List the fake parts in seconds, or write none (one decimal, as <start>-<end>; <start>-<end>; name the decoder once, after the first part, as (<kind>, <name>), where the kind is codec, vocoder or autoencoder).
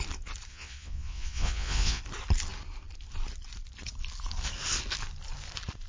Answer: 0.5-2.0 (vocoder, Vocos)